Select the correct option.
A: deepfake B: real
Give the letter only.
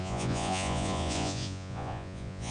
A